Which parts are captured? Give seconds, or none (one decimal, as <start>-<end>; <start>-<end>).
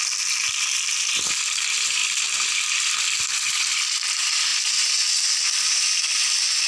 0.0-6.7